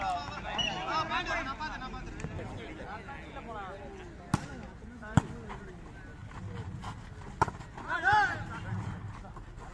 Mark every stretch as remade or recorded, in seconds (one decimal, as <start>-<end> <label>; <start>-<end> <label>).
0.0-9.7 recorded